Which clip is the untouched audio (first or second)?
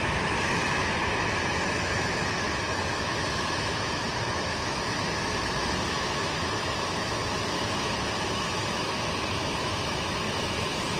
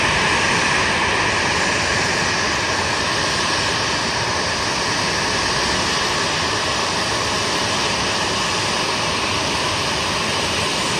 second